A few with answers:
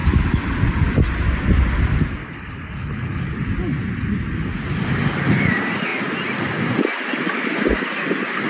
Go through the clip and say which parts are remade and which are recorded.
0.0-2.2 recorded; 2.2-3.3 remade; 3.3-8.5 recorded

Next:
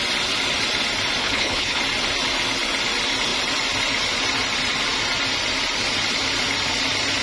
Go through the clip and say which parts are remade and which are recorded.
0.0-1.2 recorded; 1.2-1.8 remade; 1.8-7.2 recorded

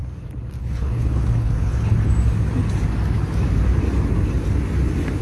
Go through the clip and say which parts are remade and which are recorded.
0.0-0.6 recorded; 0.6-2.1 remade; 2.1-5.2 recorded

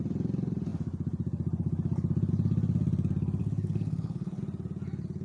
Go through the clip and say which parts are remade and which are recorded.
0.0-3.4 recorded; 3.4-4.4 remade; 4.4-5.2 recorded

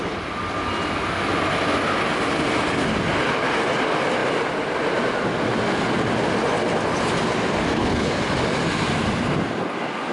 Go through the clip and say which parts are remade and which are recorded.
0.0-7.7 recorded; 7.7-8.2 remade; 8.2-10.1 recorded

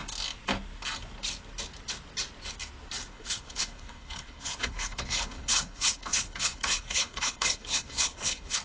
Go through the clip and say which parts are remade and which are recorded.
0.0-3.1 recorded; 3.1-8.6 remade

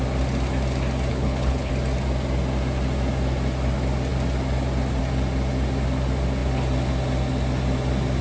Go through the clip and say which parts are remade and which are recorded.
0.0-1.1 recorded; 1.1-1.7 remade; 1.7-8.2 recorded

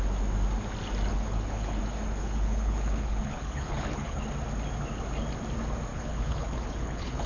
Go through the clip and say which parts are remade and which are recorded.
0.0-1.1 recorded; 1.1-1.8 remade; 1.8-2.2 recorded; 2.2-4.2 remade; 4.2-5.9 recorded; 5.9-7.3 remade